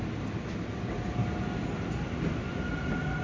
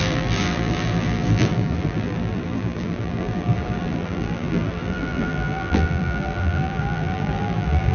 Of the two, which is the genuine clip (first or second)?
first